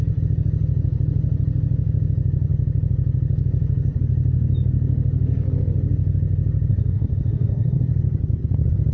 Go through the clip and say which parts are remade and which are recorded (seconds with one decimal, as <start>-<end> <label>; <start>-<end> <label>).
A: 0.0-6.7 recorded; 6.7-7.9 remade; 7.9-8.9 recorded